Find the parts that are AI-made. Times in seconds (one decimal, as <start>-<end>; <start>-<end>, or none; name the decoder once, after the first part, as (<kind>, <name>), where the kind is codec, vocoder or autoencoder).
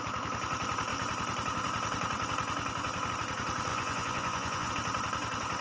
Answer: 3.7-4.7 (vocoder, Vocos)